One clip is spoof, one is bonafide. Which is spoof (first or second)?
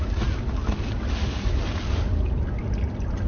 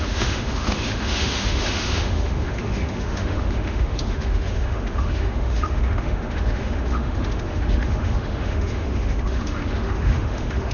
second